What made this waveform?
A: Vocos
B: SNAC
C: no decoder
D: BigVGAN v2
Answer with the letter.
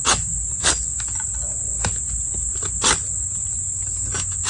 C